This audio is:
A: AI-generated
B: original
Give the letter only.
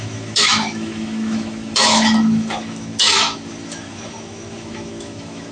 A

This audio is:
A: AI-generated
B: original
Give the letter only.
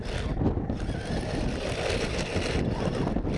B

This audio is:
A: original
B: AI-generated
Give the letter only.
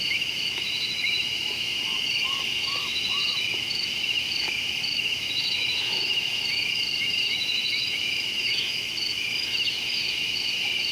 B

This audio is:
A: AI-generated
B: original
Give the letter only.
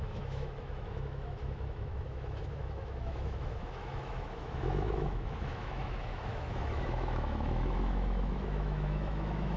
A